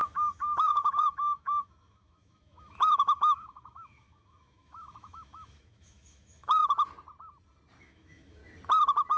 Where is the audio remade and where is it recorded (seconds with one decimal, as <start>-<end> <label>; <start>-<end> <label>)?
0.0-6.6 remade; 6.6-7.8 recorded; 7.8-8.4 remade; 8.4-9.2 recorded